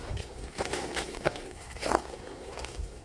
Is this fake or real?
fake